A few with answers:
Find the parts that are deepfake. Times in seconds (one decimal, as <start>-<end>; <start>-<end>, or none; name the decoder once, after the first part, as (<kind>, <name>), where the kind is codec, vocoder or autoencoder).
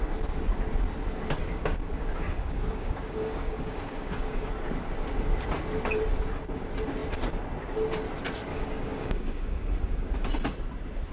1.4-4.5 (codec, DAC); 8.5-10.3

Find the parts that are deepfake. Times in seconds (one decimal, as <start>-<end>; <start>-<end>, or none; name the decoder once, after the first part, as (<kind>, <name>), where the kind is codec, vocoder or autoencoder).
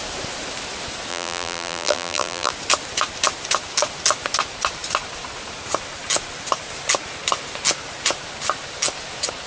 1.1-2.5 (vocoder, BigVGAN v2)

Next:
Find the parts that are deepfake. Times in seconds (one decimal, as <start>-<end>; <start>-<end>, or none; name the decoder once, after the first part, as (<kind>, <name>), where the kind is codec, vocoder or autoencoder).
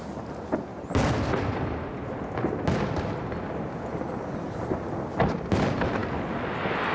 none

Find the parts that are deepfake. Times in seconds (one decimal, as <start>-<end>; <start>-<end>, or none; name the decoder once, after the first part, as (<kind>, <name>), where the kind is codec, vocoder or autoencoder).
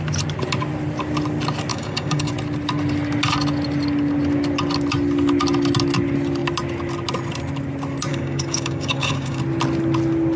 1.7-2.3 (codec, DAC); 8.1-9.4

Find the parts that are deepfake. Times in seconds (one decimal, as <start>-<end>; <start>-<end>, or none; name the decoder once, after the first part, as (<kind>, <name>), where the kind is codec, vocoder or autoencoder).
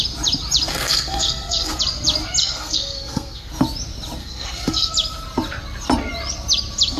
0.7-1.8 (codec, SNAC); 2.4-3.5; 4.2-4.9